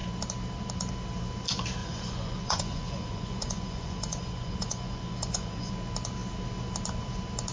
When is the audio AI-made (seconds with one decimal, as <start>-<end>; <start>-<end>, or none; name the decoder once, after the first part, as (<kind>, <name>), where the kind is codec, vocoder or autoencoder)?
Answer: 1.8-5.7 (vocoder, Vocos)